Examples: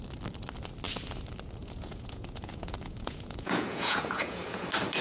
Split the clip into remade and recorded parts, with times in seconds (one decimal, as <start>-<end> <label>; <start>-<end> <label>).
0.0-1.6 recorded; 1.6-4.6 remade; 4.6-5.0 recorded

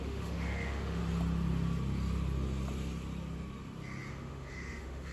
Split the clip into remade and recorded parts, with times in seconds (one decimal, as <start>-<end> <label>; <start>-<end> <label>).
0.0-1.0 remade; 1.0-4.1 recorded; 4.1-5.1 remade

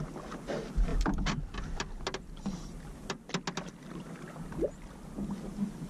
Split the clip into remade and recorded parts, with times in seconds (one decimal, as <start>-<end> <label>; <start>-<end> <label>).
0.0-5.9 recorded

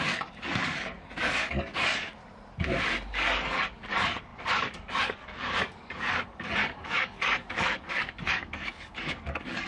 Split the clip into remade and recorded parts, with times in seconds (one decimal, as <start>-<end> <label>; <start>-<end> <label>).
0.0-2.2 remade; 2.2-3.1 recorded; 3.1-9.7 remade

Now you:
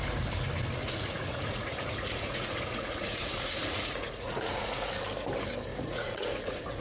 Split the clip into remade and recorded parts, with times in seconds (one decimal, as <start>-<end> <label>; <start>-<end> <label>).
0.0-0.8 recorded; 0.8-4.9 remade; 4.9-5.7 recorded; 5.7-6.8 remade